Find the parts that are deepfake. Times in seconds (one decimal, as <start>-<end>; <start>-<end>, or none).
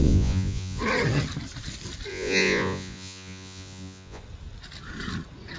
0.0-0.8; 2.1-4.2